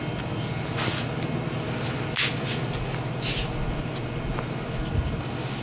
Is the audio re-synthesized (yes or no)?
no